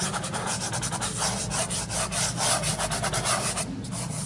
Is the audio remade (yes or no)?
no